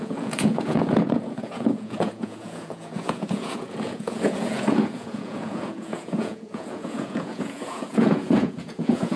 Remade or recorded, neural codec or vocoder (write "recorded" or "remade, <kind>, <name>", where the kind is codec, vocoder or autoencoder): remade, vocoder, Vocos